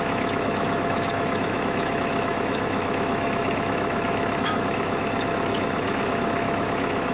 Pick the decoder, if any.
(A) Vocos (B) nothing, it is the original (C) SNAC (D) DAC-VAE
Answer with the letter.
D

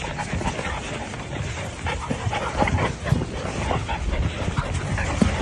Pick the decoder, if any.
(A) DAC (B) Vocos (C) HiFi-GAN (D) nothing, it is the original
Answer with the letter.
D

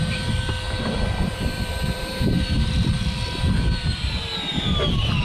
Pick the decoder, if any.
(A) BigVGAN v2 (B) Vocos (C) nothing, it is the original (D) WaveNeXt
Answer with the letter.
A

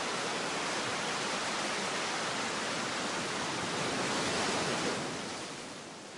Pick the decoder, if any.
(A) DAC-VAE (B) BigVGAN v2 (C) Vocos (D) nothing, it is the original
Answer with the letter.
D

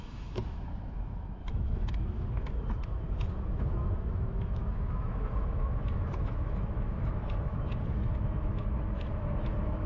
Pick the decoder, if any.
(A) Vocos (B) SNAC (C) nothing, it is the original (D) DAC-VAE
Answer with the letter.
D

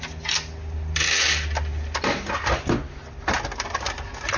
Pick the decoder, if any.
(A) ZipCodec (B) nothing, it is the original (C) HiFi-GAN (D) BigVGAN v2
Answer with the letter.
B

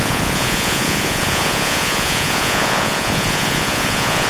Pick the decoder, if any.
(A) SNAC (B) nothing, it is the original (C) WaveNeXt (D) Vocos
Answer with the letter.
D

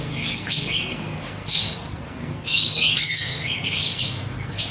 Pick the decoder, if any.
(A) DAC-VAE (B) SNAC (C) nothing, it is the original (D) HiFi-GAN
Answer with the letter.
B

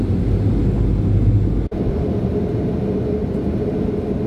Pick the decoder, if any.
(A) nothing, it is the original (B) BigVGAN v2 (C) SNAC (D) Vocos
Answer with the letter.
A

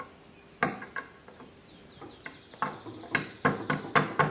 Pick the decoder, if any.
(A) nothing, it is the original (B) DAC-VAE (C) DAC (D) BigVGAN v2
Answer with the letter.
A